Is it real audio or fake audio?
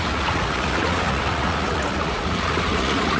fake